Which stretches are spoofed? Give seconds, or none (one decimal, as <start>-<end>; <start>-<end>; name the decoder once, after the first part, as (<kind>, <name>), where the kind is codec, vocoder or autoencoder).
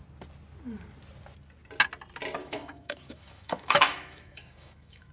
2.4-5.1 (autoencoder, DAC-VAE)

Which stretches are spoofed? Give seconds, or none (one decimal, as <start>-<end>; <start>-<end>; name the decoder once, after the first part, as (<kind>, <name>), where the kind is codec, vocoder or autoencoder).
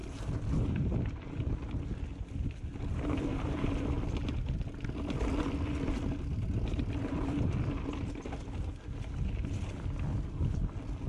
none